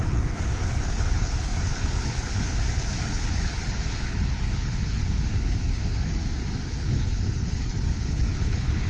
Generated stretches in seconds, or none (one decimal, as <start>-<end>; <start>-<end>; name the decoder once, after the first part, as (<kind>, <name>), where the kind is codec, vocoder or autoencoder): 0.0-6.2 (codec, HILCodec); 6.7-8.9